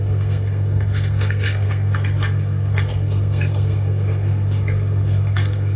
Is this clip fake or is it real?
fake